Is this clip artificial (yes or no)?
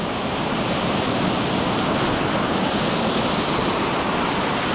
no